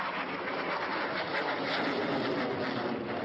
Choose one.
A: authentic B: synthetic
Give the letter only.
A